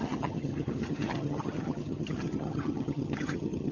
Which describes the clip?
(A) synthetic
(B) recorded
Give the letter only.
A